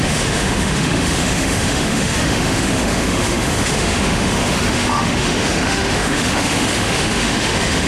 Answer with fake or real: fake